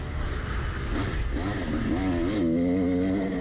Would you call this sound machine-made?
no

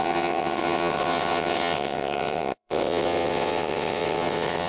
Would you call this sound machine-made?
yes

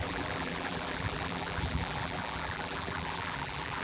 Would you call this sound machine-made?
yes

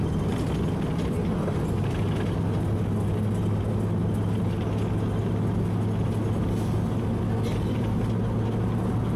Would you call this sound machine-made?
no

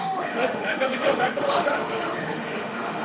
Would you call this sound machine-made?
yes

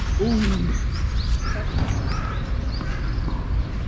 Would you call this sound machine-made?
no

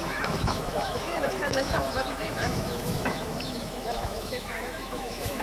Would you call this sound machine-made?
yes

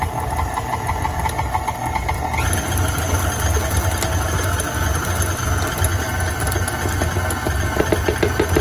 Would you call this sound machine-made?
no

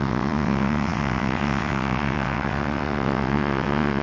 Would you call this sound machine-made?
yes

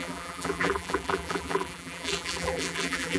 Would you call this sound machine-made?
yes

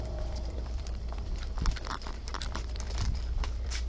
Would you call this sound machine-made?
yes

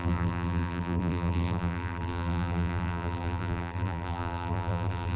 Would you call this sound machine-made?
yes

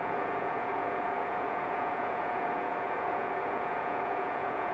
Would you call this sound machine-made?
yes